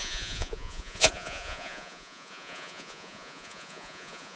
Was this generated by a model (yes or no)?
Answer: yes